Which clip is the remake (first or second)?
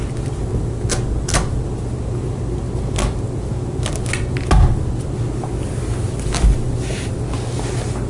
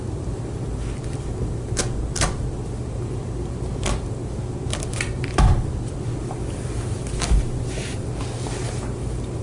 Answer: second